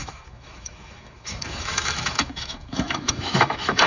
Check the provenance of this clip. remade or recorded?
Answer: remade